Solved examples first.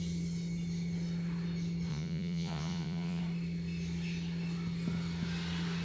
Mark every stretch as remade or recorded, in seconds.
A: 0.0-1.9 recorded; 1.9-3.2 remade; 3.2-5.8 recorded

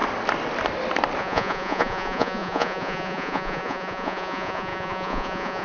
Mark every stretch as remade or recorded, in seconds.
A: 0.0-1.2 recorded; 1.2-5.6 remade